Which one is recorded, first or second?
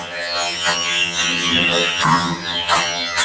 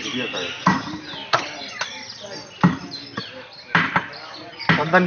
second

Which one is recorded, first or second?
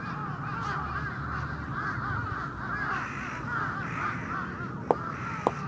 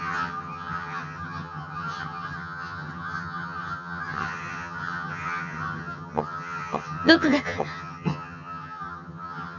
first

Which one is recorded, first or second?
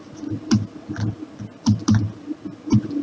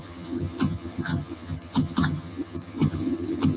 first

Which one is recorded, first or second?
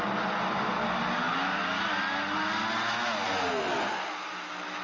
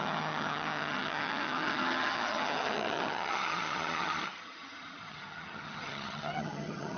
first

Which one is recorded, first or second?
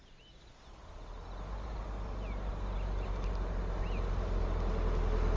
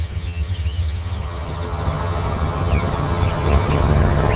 first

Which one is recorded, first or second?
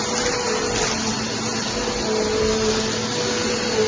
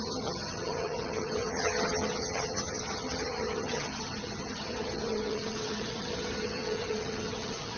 first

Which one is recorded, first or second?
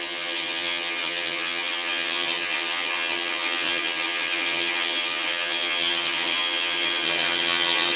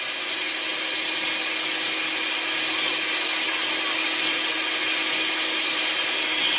second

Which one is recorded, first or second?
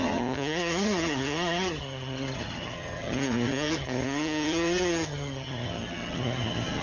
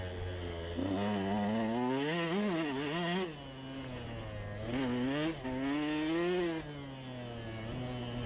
second